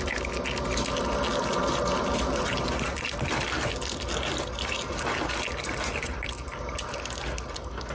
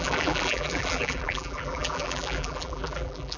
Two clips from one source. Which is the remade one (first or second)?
second